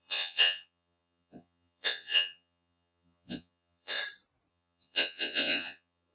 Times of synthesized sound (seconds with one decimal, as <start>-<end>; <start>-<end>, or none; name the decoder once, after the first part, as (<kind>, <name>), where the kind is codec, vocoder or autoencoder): 0.0-4.0 (vocoder, Vocos); 4.5-6.1

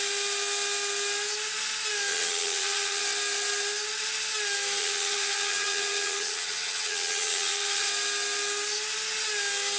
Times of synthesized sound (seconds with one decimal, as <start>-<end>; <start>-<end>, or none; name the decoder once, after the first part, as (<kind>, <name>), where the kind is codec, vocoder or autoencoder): 2.1-3.0 (vocoder, HiFi-GAN); 4.8-7.9

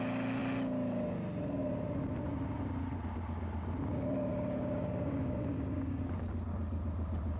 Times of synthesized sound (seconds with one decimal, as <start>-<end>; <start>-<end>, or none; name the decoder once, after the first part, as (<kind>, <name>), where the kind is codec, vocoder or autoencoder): 4.3-6.0 (codec, DAC)

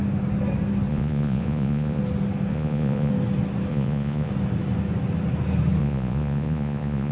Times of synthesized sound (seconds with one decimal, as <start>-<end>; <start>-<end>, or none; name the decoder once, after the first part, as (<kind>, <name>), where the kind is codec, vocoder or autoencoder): 0.9-2.0 (vocoder, Vocos); 2.5-3.1; 3.7-4.3; 5.8-7.1

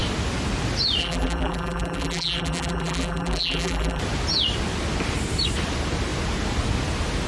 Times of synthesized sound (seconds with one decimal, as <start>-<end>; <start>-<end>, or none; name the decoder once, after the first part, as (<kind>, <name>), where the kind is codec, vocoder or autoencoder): 1.0-4.0 (vocoder, BigVGAN v2)